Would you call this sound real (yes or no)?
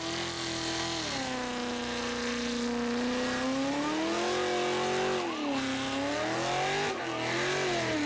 yes